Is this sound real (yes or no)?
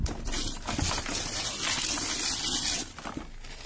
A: yes